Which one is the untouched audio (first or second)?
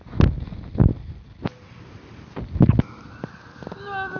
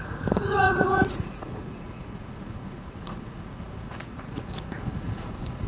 first